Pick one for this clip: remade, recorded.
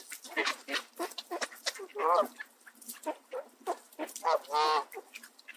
recorded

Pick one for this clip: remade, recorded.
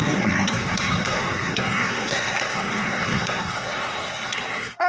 remade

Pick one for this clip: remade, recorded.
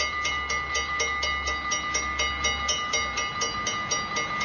recorded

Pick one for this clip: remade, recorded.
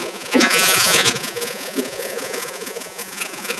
remade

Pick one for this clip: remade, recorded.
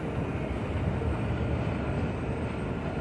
recorded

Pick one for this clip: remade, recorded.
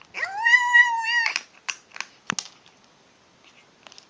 recorded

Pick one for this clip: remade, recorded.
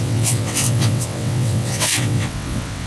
remade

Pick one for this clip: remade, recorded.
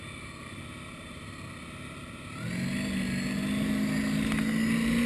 recorded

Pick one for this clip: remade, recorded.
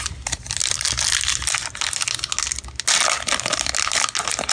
recorded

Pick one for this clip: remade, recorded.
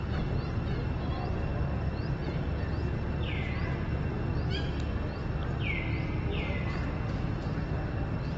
recorded